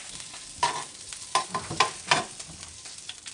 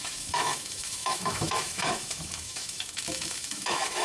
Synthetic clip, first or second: second